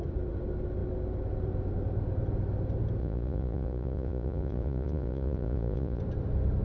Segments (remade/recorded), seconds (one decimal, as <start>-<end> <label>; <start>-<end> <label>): 0.0-3.0 recorded; 3.0-6.0 remade; 6.0-6.6 recorded